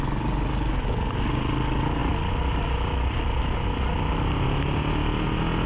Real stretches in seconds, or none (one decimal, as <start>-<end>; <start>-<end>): 0.0-5.7